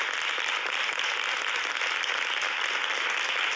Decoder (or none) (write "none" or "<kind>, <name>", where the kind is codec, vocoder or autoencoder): none